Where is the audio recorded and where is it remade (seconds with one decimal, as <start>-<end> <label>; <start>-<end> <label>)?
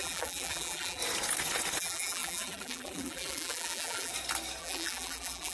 0.0-1.0 remade; 1.0-1.8 recorded; 1.8-4.1 remade; 4.1-4.6 recorded; 4.6-5.5 remade